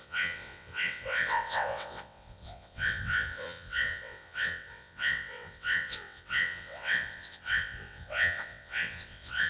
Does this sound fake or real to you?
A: fake